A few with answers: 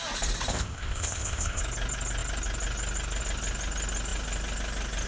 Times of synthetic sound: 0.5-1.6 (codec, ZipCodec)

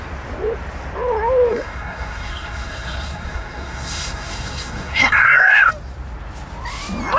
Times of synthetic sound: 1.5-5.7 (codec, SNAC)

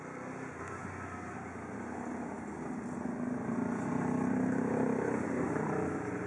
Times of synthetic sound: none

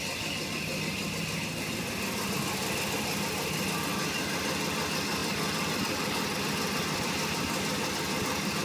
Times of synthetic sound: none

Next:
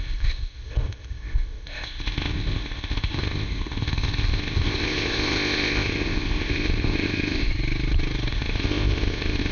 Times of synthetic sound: 0.0-7.5 (codec, ZipCodec); 8.3-9.5

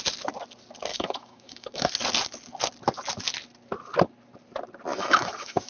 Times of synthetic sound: 0.9-1.9 (autoencoder, DAC-VAE); 4.9-5.7

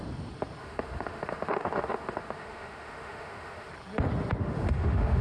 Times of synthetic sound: 0.6-3.7 (autoencoder, DAC-VAE); 4.4-5.2

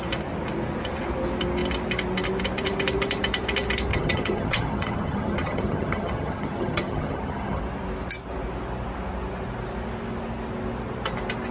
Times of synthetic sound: 3.9-7.6 (vocoder, HiFi-GAN)